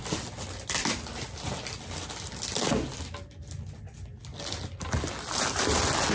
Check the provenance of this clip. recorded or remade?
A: recorded